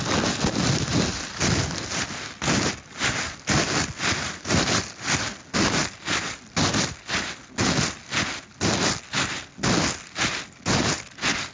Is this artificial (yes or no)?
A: no